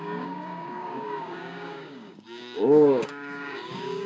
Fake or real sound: fake